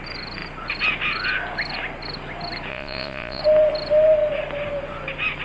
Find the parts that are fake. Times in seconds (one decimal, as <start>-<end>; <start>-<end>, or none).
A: 2.7-3.4